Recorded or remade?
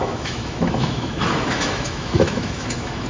remade